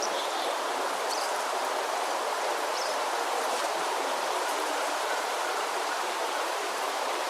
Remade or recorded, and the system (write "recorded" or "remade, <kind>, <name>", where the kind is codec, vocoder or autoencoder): remade, vocoder, BigVGAN v2